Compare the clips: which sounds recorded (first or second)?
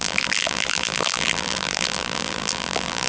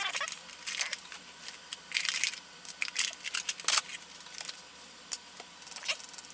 second